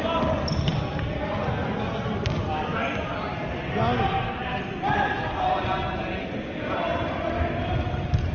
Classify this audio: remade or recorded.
recorded